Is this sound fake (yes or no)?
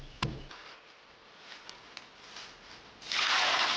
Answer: no